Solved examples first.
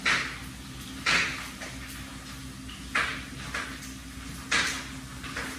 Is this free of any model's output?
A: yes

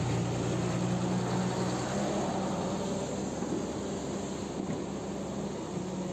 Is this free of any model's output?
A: yes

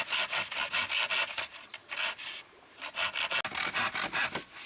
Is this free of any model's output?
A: yes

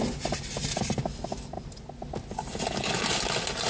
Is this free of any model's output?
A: yes